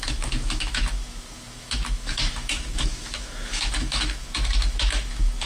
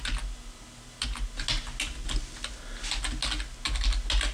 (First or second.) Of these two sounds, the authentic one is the second